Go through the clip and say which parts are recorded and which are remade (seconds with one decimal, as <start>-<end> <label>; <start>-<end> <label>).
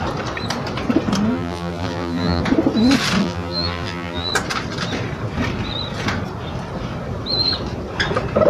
0.0-1.3 recorded; 1.3-2.4 remade; 2.4-3.2 recorded; 3.2-4.3 remade; 4.3-8.5 recorded